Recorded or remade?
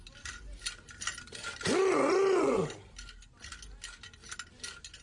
recorded